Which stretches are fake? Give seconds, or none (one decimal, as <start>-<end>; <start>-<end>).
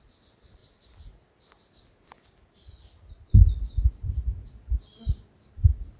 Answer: none